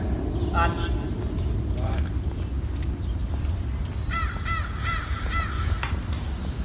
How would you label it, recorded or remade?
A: recorded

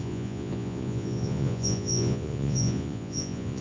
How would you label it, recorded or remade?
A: remade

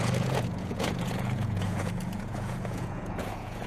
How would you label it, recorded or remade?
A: remade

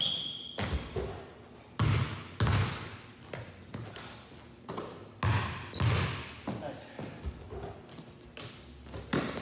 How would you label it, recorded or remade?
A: recorded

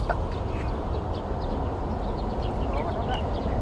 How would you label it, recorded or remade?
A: recorded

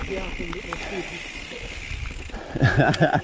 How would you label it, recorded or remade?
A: recorded